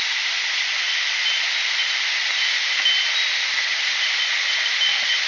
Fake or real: real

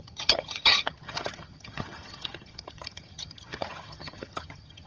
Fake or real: fake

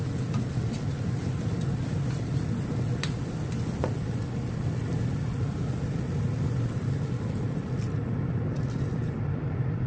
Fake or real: real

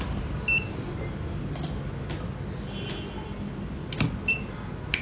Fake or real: real